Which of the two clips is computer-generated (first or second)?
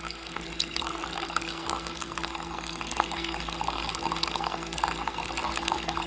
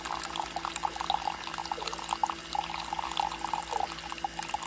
first